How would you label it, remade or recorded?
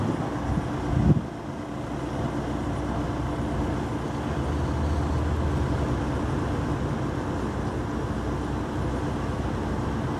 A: recorded